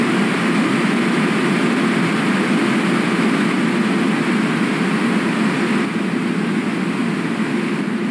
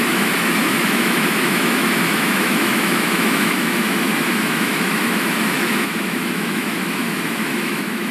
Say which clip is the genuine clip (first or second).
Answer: first